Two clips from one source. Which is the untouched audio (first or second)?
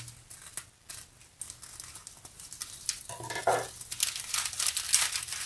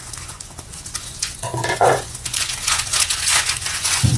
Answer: first